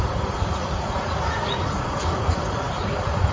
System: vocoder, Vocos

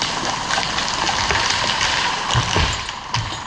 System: none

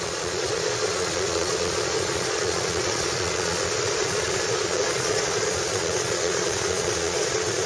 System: vocoder, Vocos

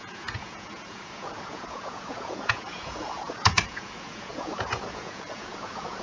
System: vocoder, Vocos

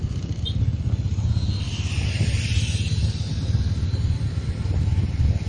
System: none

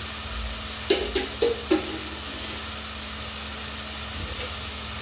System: none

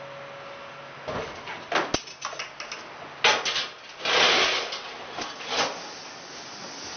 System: none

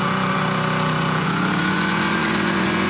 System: vocoder, Vocos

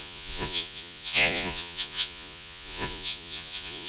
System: vocoder, Vocos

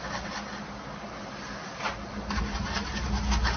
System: none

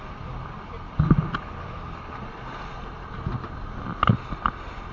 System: none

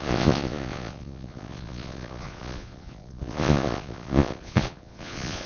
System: vocoder, Vocos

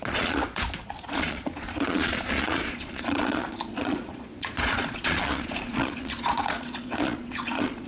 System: vocoder, Vocos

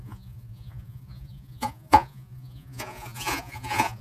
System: vocoder, Vocos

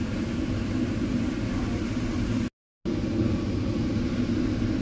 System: none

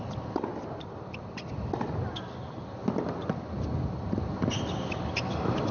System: none